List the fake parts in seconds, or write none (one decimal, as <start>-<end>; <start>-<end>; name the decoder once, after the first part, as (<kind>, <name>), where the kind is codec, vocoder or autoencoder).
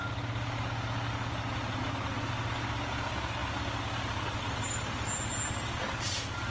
none